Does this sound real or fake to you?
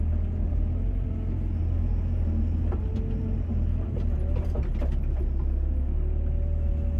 real